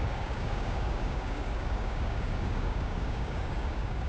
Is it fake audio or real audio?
fake